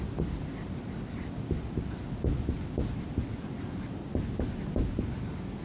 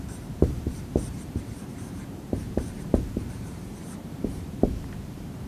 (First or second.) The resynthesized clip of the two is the second